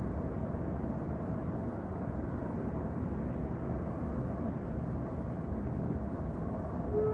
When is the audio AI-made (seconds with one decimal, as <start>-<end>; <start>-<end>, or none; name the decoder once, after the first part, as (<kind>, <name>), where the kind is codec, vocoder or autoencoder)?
none